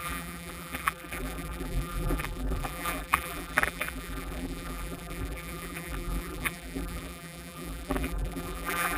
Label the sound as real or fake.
fake